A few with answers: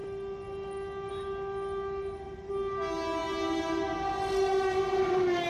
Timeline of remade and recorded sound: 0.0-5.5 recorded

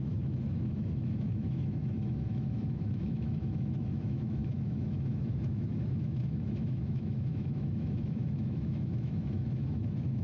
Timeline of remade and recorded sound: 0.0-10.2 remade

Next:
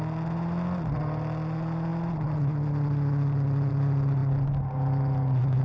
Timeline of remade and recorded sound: 0.0-5.6 recorded